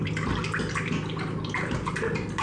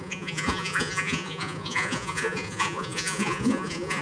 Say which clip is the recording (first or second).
first